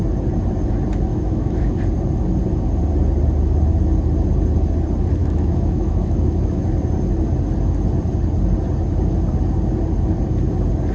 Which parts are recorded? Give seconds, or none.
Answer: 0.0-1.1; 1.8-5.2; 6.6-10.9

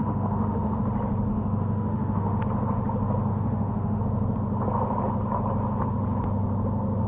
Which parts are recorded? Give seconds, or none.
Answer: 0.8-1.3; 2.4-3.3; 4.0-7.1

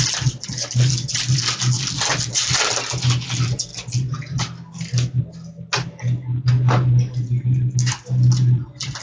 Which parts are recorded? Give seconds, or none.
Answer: 0.0-9.0

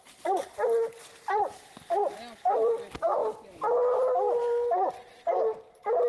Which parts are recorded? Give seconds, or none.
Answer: 0.0-6.1

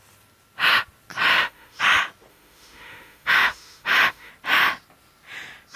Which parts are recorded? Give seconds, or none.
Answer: 0.0-1.3; 1.8-2.3; 4.3-5.8

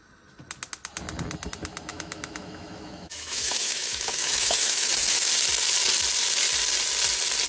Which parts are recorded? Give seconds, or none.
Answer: 0.0-1.9; 5.3-7.5

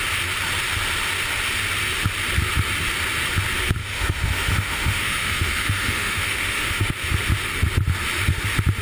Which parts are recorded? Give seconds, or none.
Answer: 0.0-3.8; 6.9-8.8

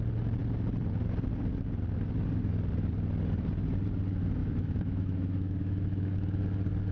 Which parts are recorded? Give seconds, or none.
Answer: 0.0-4.4; 6.4-6.9